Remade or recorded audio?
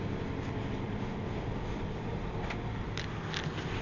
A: recorded